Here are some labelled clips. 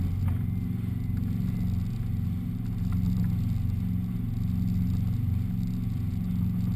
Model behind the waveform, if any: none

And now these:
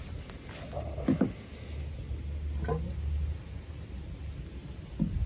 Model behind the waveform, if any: none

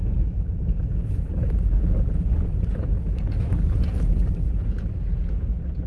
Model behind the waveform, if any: none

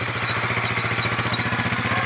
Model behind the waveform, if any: none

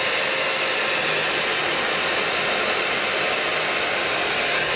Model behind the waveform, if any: none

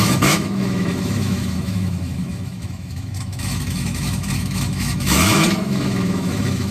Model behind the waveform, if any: autoencoder, DAC-VAE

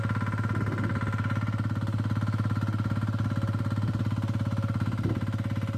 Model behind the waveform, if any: none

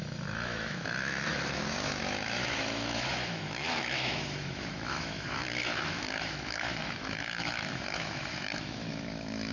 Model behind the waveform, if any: autoencoder, DAC-VAE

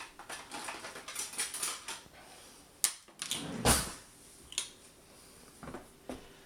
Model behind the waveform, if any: none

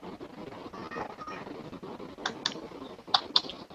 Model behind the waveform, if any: none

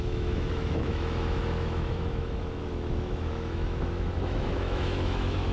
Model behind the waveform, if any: autoencoder, DAC-VAE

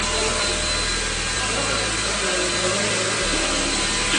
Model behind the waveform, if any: none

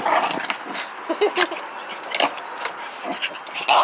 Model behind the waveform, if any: none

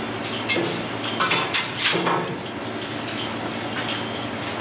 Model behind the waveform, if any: none